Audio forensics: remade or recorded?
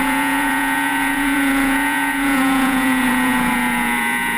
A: remade